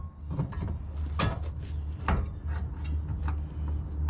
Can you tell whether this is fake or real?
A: real